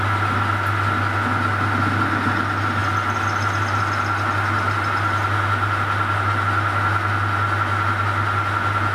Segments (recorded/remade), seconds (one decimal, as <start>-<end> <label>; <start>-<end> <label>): 0.0-8.9 recorded